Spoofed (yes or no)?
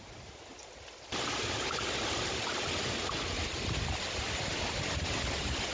no